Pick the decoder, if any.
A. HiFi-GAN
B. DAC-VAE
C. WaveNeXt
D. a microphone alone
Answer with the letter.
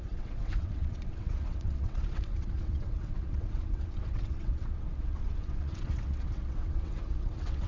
C